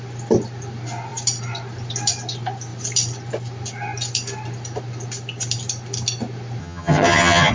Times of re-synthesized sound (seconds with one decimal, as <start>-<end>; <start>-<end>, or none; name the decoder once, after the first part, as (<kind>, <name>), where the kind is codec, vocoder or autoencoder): 6.6-7.5 (vocoder, HiFi-GAN)